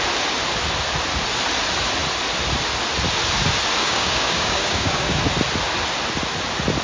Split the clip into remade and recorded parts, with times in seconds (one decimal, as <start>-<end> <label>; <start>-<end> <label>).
0.0-3.8 recorded; 3.8-5.2 remade; 5.2-6.8 recorded

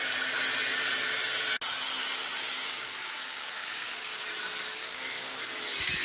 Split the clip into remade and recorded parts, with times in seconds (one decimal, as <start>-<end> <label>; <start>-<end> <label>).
0.0-2.0 recorded; 2.0-4.2 remade; 4.2-4.8 recorded; 4.8-5.4 remade; 5.4-6.0 recorded

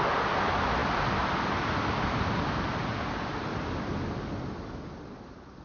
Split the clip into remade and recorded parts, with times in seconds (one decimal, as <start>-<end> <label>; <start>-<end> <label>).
0.0-5.6 recorded

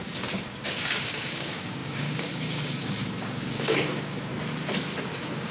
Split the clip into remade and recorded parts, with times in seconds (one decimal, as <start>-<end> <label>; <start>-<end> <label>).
0.0-4.3 remade; 4.3-5.0 recorded; 5.0-5.5 remade

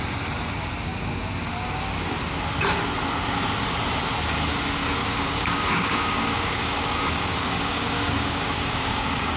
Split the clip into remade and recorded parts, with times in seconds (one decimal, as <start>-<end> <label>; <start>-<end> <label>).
0.0-5.0 recorded; 5.0-9.4 remade

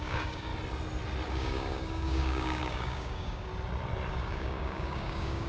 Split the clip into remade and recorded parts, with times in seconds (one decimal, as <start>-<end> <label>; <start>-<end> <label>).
0.0-0.5 remade; 0.5-1.3 recorded; 1.3-3.5 remade; 3.5-4.1 recorded; 4.1-5.5 remade

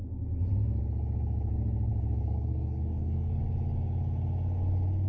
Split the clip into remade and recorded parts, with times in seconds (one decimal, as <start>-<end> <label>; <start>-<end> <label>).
0.0-1.9 recorded; 1.9-3.4 remade; 3.4-5.1 recorded